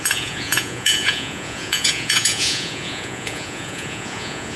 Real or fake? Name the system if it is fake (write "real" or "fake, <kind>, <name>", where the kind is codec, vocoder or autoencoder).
fake, vocoder, Vocos